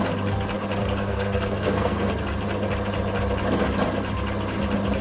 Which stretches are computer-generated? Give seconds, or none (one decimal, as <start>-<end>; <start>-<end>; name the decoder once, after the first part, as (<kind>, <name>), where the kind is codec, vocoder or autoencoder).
0.8-2.1 (codec, SNAC)